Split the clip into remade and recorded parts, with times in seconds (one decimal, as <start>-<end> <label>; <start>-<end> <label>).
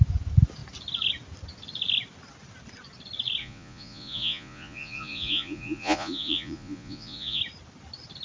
0.0-3.4 recorded; 3.4-7.4 remade; 7.4-8.2 recorded